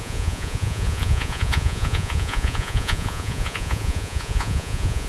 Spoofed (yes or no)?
yes